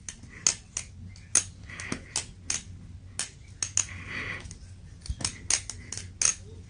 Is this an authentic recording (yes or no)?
yes